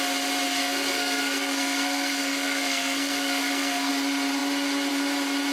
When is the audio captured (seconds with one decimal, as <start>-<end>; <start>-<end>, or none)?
0.0-0.6; 3.9-5.5